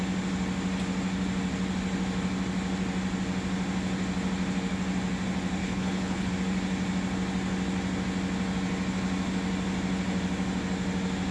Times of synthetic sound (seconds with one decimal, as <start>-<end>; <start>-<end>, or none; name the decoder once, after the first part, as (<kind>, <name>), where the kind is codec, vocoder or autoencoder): 5.6-6.3 (codec, HILCodec)